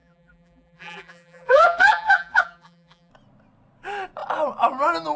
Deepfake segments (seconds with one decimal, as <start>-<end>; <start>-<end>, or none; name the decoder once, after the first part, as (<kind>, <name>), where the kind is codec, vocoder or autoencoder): 0.0-3.1 (vocoder, BigVGAN v2)